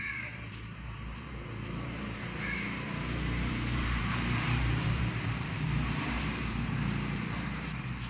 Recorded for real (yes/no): no